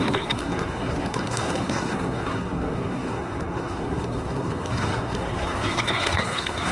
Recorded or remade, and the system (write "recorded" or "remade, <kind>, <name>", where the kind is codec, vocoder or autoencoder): remade, codec, SNAC